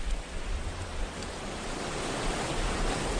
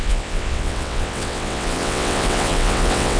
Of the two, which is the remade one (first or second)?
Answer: second